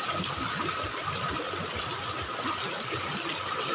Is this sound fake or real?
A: real